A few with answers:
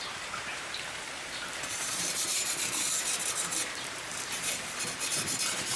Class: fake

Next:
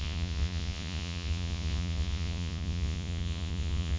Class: fake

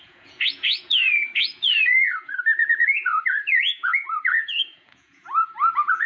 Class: fake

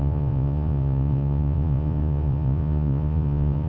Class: fake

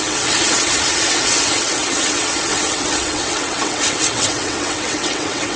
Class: fake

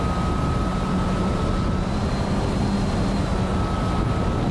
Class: real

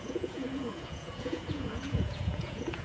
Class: fake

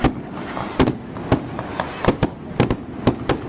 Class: fake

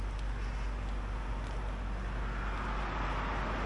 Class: real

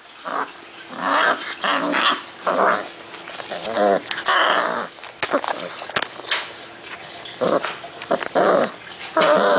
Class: real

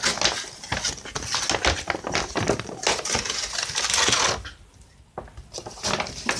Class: real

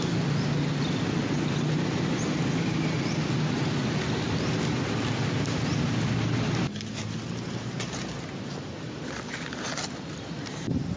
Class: real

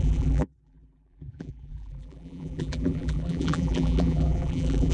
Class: fake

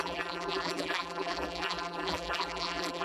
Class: fake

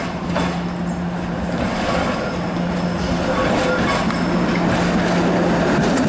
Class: real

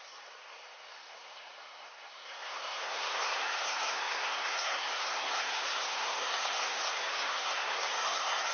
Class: fake